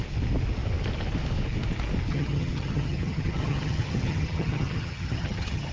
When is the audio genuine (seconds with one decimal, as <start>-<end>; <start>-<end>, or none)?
0.0-2.1